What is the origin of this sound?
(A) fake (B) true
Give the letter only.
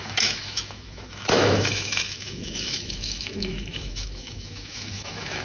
A